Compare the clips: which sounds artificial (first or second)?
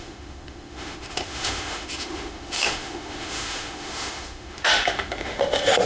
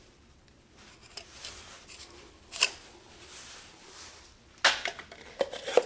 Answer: first